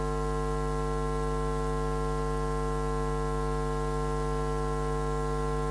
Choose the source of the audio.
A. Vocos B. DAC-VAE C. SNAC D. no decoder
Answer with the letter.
D